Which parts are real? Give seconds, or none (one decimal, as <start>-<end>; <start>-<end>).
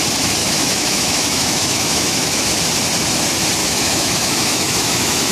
0.0-0.4; 2.6-3.6